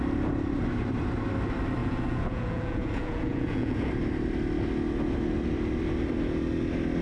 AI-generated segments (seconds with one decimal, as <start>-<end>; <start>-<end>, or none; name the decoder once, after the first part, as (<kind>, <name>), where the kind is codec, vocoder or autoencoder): 1.8-3.9 (vocoder, Vocos)